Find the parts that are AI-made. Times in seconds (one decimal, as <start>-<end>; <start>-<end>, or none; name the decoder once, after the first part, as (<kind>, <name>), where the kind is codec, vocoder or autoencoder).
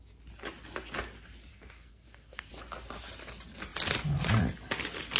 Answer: 1.5-2.5 (codec, SNAC)